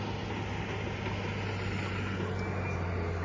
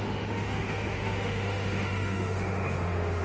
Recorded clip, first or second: first